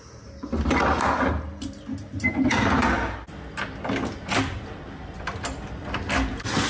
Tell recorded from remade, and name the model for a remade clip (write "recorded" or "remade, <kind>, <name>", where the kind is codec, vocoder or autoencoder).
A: recorded